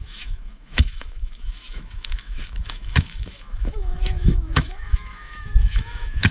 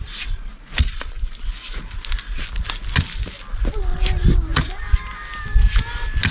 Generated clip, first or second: first